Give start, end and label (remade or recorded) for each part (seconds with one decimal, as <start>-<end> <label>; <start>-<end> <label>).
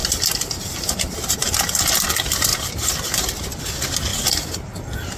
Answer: 0.0-1.7 remade; 1.7-2.5 recorded; 2.5-3.6 remade; 3.6-5.2 recorded